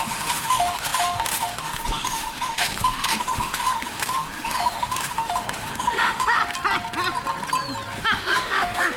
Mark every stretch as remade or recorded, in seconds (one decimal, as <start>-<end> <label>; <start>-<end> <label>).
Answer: 0.0-6.4 remade; 6.4-8.0 recorded; 8.0-9.0 remade